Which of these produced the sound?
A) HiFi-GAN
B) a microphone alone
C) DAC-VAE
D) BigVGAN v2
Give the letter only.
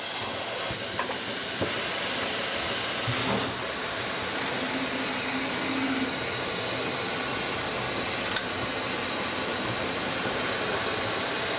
B